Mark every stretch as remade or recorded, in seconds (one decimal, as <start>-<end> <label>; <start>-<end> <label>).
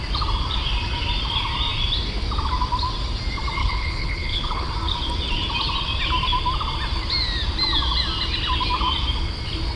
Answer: 0.0-3.6 recorded; 3.6-4.7 remade; 4.7-9.8 recorded